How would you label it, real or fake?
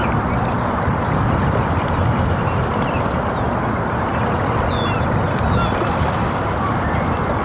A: real